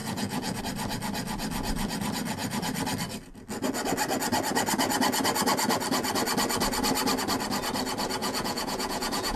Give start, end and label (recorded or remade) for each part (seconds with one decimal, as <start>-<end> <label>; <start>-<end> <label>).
0.0-0.6 remade; 0.6-8.2 recorded; 8.2-9.4 remade

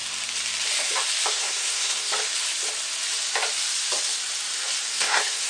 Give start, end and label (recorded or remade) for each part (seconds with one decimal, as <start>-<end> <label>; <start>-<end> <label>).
0.0-1.3 recorded; 1.3-2.1 remade; 2.1-4.9 recorded; 4.9-5.5 remade

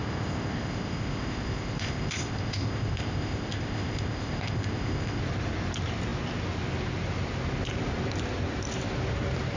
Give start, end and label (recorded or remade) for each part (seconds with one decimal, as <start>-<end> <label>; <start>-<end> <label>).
0.0-5.2 remade; 5.2-9.6 recorded

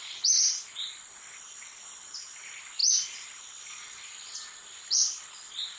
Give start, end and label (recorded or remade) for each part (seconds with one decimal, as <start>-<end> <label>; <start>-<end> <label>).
0.0-5.8 recorded

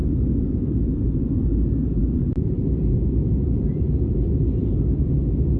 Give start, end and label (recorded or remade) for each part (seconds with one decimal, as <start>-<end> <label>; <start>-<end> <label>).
0.0-5.6 remade